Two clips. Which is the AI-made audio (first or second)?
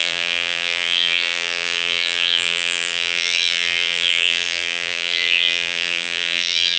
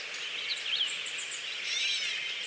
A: first